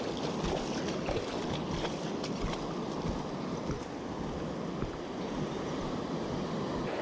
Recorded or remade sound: recorded